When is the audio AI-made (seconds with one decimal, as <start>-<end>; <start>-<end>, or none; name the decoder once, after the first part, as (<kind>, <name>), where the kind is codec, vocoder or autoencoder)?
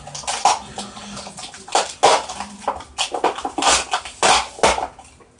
none